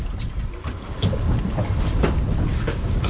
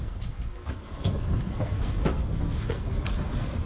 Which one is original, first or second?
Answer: first